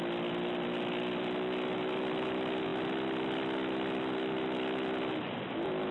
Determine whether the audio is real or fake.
real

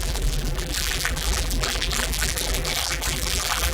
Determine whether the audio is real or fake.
fake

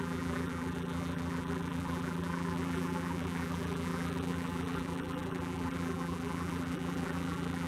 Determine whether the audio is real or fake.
fake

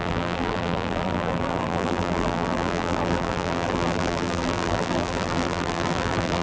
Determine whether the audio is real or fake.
fake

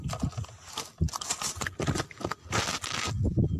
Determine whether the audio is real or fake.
real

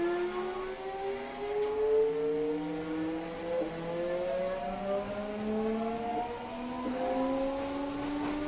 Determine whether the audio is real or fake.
real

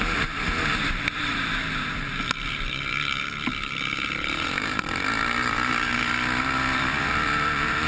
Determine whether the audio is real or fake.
fake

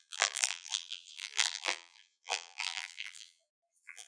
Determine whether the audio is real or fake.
fake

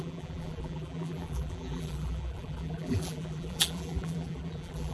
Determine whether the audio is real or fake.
fake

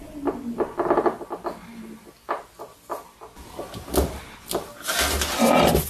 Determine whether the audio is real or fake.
real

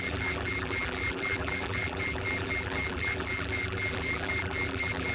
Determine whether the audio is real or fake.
fake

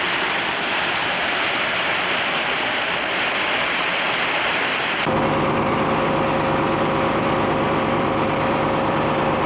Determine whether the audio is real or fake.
fake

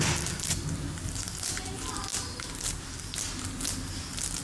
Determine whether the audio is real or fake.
real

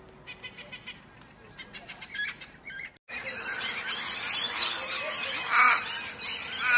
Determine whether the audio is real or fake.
real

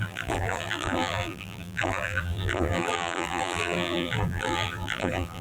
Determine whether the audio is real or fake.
fake